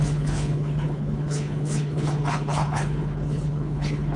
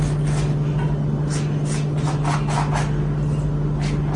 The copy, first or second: first